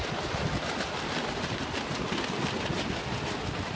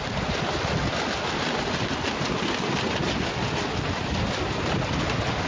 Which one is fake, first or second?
first